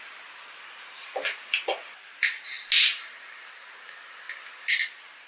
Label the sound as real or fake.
real